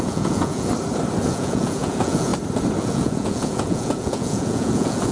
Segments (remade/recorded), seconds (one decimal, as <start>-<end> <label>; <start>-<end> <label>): 0.0-0.7 remade; 0.7-1.2 recorded; 1.2-2.3 remade; 2.3-2.8 recorded; 2.8-5.1 remade